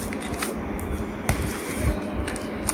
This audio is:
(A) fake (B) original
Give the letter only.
B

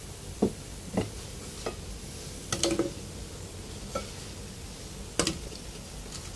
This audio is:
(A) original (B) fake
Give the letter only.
A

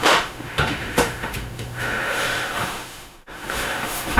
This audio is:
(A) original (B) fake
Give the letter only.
B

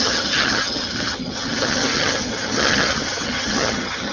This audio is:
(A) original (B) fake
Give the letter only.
B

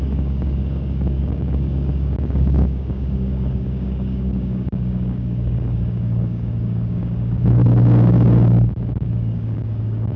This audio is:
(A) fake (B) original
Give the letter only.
A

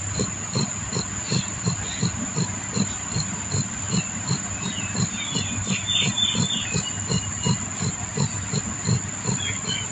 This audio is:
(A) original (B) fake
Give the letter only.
A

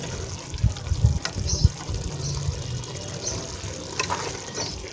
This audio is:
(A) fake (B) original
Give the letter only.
B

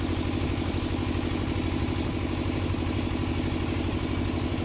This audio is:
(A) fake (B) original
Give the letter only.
B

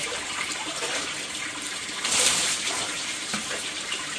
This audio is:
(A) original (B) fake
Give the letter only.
B